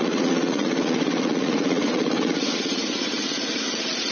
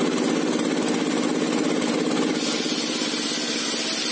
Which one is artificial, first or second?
first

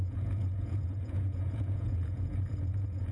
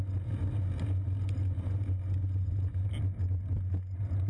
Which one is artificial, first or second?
first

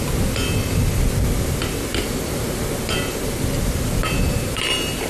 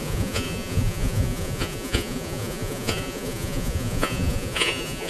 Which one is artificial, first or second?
second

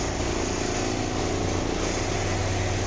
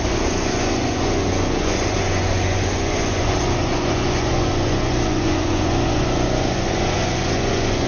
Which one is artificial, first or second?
second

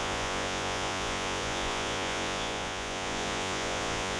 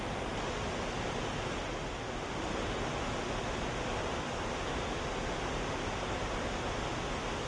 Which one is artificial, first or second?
first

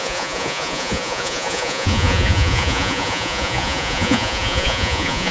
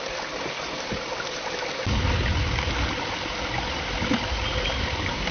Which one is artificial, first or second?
first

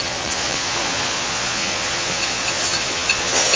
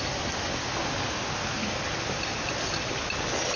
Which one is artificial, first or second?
first